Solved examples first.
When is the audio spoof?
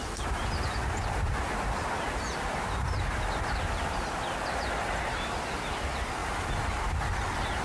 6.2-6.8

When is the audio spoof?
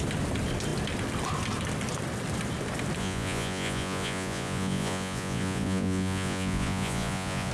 3.0-7.5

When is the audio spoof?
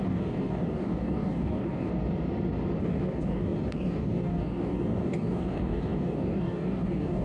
0.0-1.9; 2.8-7.2